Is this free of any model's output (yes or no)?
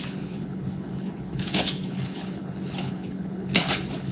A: no